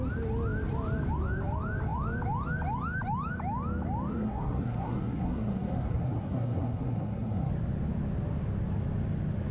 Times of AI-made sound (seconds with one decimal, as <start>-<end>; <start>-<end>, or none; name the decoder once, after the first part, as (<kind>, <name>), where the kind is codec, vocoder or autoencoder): 4.1-7.5 (codec, SNAC)